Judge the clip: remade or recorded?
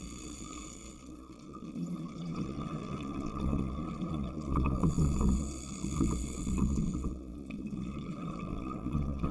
remade